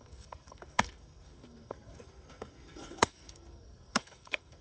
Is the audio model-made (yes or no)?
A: yes